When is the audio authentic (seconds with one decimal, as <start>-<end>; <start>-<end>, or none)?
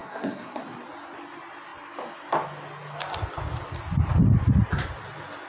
0.6-5.5